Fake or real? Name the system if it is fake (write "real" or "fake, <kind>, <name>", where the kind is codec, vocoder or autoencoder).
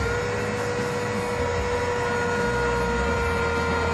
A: real